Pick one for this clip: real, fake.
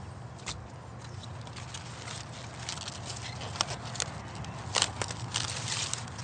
real